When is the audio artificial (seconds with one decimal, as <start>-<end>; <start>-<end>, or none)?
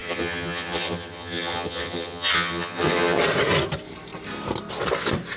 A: 0.0-3.2